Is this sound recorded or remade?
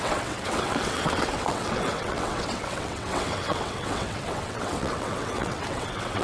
remade